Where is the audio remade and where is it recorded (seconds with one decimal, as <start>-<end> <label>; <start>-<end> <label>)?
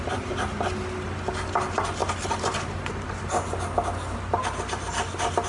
0.0-5.5 recorded